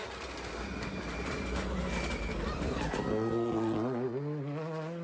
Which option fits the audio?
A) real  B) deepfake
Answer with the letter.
A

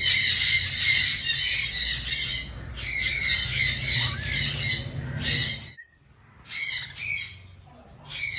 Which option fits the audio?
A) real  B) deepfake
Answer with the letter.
A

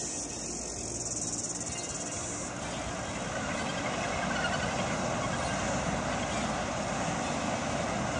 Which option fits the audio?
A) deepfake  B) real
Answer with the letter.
B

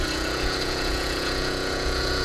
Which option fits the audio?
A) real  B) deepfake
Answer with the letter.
B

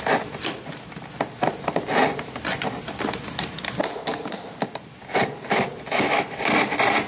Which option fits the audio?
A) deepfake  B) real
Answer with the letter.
A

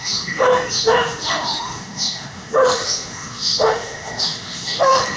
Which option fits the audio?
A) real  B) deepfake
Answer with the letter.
B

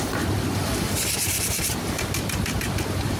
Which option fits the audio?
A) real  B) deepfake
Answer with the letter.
B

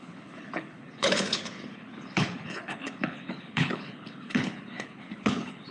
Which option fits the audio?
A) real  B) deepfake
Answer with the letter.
B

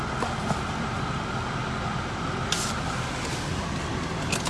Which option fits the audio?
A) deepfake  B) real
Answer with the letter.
B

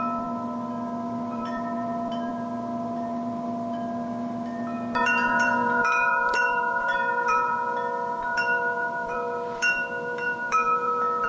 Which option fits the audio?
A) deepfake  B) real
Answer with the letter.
A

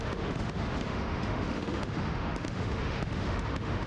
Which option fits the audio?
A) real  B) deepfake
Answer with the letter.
B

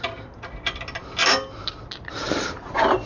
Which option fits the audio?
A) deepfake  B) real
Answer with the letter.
B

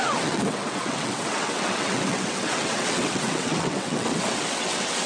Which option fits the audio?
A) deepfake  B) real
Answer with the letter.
A